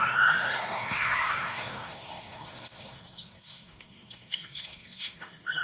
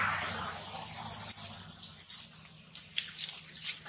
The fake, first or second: first